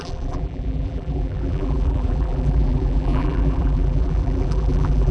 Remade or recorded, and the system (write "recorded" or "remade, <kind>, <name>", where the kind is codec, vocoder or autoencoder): remade, vocoder, BigVGAN v2